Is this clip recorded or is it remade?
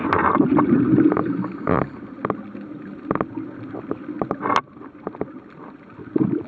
recorded